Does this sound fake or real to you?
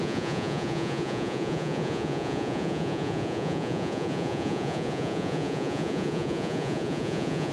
fake